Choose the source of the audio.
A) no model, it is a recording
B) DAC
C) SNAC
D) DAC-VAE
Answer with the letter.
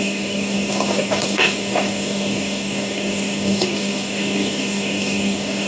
B